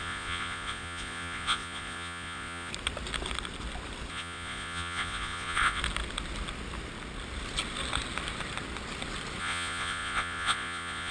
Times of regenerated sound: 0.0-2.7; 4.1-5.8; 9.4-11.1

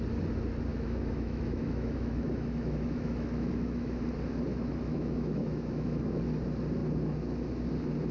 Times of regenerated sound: 0.7-4.0; 4.5-6.2

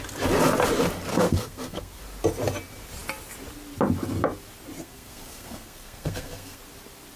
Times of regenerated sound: 1.1-2.0; 4.8-6.6

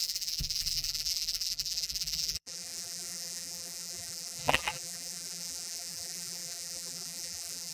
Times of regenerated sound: 0.0-7.7

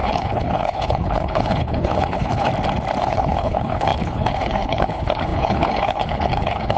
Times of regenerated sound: 0.0-2.5; 3.0-6.8